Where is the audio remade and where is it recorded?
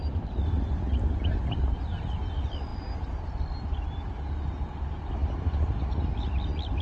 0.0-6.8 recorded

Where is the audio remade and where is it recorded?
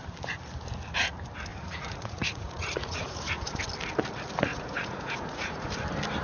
0.0-1.5 recorded; 1.5-3.6 remade; 3.6-4.5 recorded; 4.5-5.8 remade; 5.8-6.2 recorded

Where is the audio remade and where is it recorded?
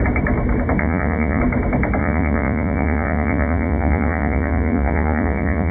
0.0-0.8 recorded; 0.8-1.4 remade; 1.4-2.0 recorded; 2.0-5.7 remade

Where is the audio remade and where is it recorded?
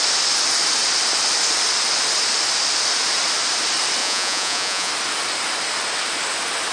0.0-4.0 recorded; 4.0-4.9 remade; 4.9-6.7 recorded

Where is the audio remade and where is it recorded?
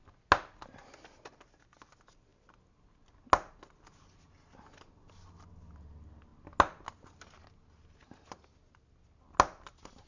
0.0-10.1 recorded